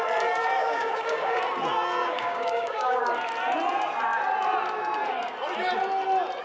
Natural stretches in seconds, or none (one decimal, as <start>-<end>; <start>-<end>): 0.0-0.6; 1.4-2.0; 3.0-6.4